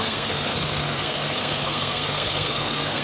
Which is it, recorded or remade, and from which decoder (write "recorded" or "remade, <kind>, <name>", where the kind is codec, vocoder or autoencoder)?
remade, codec, SNAC